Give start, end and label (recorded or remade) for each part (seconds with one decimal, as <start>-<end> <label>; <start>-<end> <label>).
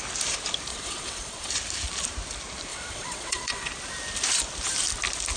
0.0-0.7 recorded; 0.7-1.5 remade; 1.5-2.7 recorded; 2.7-3.7 remade; 3.7-5.4 recorded